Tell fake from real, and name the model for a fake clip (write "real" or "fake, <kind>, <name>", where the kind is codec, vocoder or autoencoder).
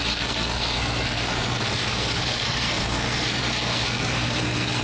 fake, codec, SNAC